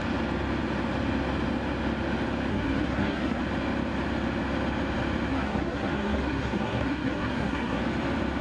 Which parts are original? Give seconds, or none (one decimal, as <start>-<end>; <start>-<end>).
0.0-2.5; 3.4-5.3; 7.8-8.4